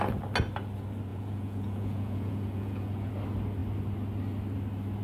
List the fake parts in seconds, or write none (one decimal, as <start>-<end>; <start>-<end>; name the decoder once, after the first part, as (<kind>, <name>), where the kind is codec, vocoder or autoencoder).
1.1-3.1 (vocoder, Vocos)